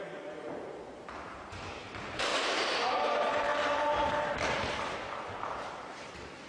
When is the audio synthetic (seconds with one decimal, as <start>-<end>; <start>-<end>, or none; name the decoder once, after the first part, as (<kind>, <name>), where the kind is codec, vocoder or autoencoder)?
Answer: 0.0-3.5 (vocoder, BigVGAN v2); 5.4-6.5